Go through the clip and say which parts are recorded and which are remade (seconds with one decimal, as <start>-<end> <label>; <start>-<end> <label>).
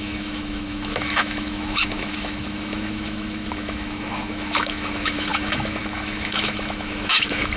0.0-7.6 remade